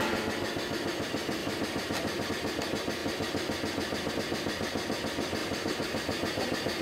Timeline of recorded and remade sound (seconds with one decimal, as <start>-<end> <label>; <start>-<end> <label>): 0.0-1.4 recorded; 1.4-2.3 remade; 2.3-5.4 recorded; 5.4-6.8 remade